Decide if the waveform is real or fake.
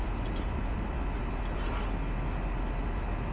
real